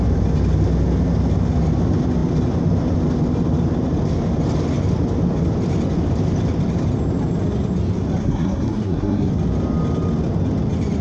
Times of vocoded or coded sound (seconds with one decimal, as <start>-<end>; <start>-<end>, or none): 8.2-9.3